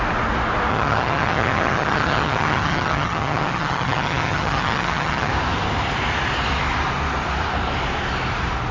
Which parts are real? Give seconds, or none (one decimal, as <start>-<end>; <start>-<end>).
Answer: 0.0-0.7; 5.3-8.7

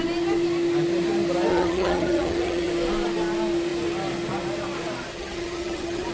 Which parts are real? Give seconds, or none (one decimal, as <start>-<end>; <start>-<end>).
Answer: 0.0-1.5; 2.7-5.1

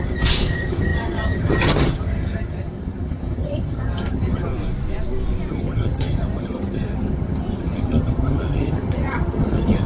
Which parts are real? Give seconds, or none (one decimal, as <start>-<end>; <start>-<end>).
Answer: 4.5-5.5

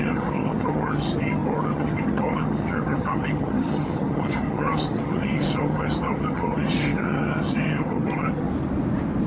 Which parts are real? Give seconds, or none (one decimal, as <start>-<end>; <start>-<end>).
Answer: 8.5-9.3

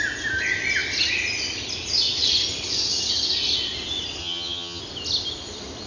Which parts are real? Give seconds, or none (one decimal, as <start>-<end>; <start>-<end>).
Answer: 0.0-4.2; 4.8-5.9

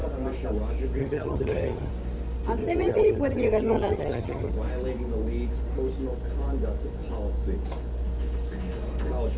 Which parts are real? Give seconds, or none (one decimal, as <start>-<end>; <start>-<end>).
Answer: 0.0-1.0; 1.9-2.6; 4.5-9.4